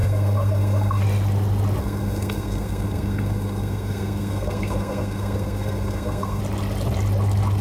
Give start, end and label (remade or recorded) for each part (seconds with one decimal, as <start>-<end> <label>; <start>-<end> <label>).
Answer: 0.0-1.0 remade; 1.0-1.8 recorded; 1.8-6.4 remade; 6.4-7.6 recorded

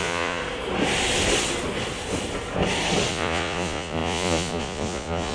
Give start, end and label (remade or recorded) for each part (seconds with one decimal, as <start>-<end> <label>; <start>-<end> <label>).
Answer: 0.0-0.4 remade; 0.4-3.1 recorded; 3.1-5.3 remade

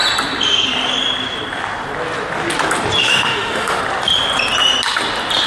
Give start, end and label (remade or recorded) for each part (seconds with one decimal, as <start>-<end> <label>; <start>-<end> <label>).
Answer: 0.0-3.0 recorded; 3.0-3.8 remade; 3.8-5.5 recorded

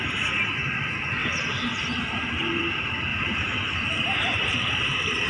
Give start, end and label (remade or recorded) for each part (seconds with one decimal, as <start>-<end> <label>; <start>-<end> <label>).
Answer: 0.0-1.2 recorded; 1.2-2.6 remade; 2.6-3.1 recorded; 3.1-5.3 remade

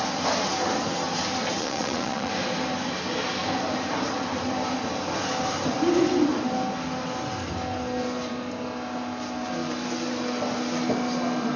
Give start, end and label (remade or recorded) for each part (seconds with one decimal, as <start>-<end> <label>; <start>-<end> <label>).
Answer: 0.0-1.6 recorded; 1.6-2.3 remade; 2.3-11.6 recorded